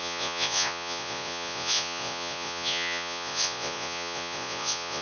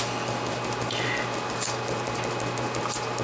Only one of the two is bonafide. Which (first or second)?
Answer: second